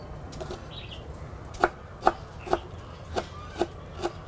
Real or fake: real